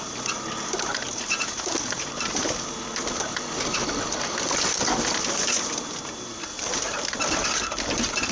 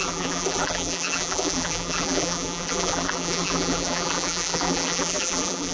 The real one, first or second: first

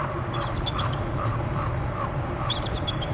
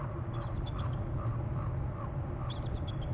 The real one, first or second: second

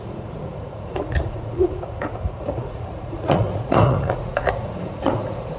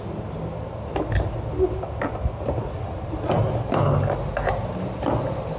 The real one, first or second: second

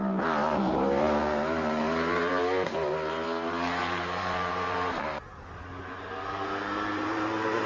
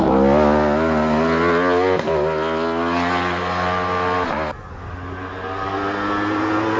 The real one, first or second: second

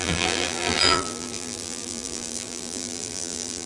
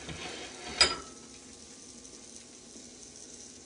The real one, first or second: second